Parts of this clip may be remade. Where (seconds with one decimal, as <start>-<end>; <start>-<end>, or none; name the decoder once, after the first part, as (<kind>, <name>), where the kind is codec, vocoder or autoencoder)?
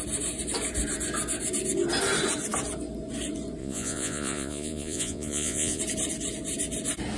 3.6-5.8 (vocoder, Vocos)